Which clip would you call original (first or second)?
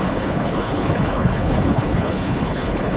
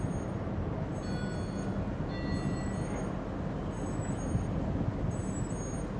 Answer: second